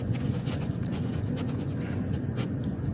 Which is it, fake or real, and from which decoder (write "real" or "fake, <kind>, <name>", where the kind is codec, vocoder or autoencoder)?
fake, vocoder, Vocos